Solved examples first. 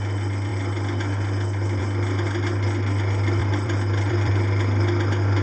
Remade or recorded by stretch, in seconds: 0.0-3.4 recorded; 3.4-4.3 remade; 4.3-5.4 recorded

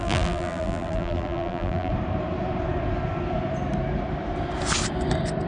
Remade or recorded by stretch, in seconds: 0.0-1.9 remade; 1.9-5.5 recorded

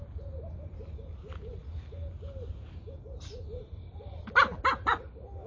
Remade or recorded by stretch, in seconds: 0.0-1.6 remade; 1.6-2.5 recorded; 2.5-5.5 remade